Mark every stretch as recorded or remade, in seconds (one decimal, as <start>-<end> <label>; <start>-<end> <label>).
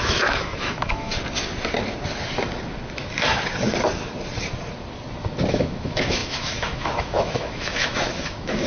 0.0-1.1 remade; 1.1-5.5 recorded; 5.5-8.7 remade